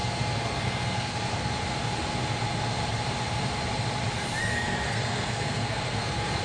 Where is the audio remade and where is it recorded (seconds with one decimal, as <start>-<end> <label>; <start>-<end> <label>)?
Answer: 0.0-1.5 remade; 1.5-4.4 recorded; 4.4-6.4 remade